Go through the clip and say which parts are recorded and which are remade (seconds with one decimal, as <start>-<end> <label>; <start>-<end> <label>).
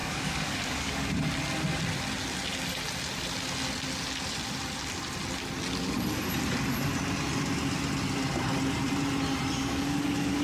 0.0-1.1 remade; 1.1-9.6 recorded; 9.6-10.4 remade